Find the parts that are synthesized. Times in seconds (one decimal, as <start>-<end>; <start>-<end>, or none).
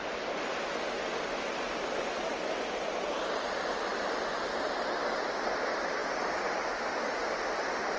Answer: none